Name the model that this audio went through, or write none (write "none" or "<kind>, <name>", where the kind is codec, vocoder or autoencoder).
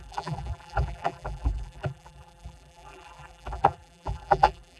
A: vocoder, BigVGAN v2